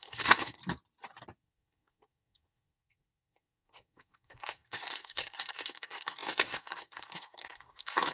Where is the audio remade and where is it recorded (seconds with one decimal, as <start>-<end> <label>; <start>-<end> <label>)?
0.0-0.6 remade; 0.6-1.4 recorded; 1.4-8.1 remade